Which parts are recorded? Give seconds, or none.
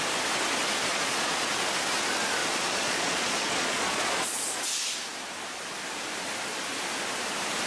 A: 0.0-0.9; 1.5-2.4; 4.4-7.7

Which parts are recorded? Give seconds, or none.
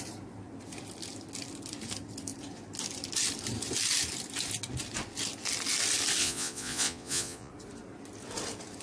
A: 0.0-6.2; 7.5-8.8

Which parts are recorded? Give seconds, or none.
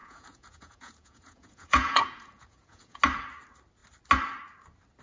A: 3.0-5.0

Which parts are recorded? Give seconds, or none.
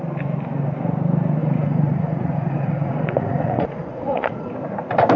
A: 0.0-1.4; 4.5-5.2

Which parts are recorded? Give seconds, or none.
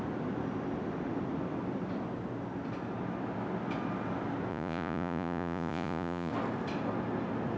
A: 0.0-4.5; 6.3-7.6